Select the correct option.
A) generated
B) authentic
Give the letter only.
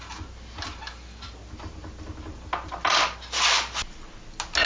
B